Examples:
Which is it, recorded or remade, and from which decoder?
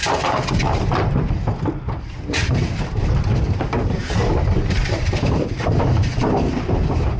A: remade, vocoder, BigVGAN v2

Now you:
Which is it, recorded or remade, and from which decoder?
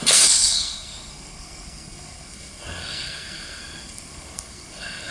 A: remade, codec, SNAC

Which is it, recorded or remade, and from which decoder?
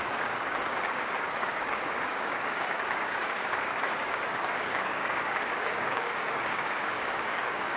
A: remade, codec, DAC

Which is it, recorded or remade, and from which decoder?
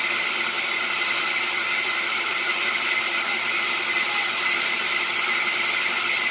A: recorded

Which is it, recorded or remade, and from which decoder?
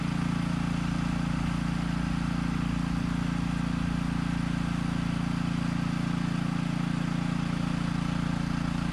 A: recorded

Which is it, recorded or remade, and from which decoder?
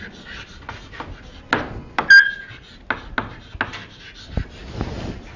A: recorded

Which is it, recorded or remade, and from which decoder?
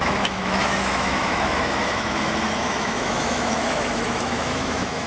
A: remade, autoencoder, DAC-VAE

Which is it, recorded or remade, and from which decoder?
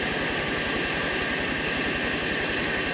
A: recorded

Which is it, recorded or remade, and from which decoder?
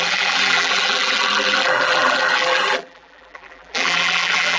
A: remade, vocoder, BigVGAN v2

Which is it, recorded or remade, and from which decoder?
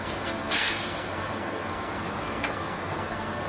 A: remade, codec, SNAC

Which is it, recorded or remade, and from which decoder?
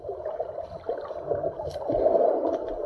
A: recorded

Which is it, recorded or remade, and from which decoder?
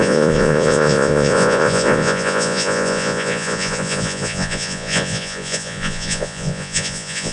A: remade, vocoder, Vocos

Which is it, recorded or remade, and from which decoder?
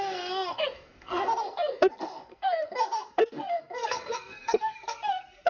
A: remade, codec, SNAC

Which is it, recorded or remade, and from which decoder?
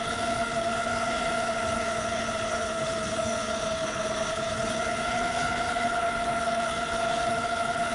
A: remade, codec, HILCodec